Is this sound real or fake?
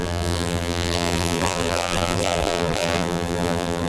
fake